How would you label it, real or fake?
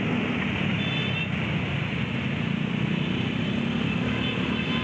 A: real